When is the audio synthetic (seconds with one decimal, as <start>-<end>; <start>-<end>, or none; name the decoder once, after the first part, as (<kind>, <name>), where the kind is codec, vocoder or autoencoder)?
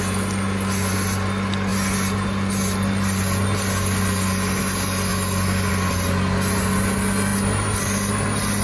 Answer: none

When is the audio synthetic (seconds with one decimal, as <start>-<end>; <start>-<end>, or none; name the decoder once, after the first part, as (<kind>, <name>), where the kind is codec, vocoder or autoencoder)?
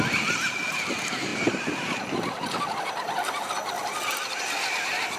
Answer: none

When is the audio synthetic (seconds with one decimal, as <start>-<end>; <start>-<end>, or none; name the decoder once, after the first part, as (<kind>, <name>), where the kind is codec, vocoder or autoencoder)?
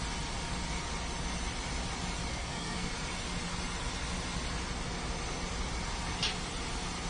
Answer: 2.3-2.9 (codec, SNAC)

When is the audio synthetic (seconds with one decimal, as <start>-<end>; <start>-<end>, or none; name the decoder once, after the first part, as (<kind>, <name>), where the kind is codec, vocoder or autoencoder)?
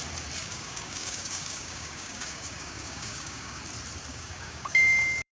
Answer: 0.4-3.6 (codec, DAC); 4.1-5.3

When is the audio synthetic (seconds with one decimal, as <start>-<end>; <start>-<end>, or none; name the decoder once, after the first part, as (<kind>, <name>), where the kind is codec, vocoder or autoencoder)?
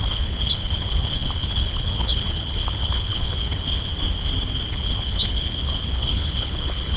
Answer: 0.0-3.9 (codec, HILCodec); 4.7-7.0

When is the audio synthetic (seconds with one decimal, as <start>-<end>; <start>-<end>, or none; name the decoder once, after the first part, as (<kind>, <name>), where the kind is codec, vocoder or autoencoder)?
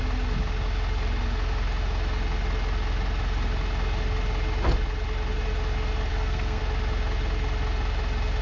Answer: 6.1-6.6 (codec, SNAC)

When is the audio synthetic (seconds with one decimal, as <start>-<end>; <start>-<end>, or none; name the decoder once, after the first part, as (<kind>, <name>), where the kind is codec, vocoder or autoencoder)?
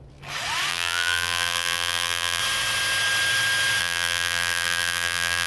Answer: 0.7-2.4 (vocoder, BigVGAN v2); 3.8-5.5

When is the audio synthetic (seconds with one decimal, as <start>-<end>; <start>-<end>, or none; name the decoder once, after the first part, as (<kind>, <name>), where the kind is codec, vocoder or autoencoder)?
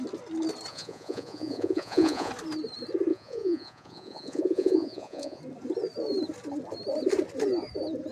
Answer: 0.7-2.3 (vocoder, Vocos); 3.1-5.4